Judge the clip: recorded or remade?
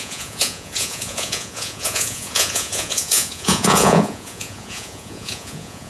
remade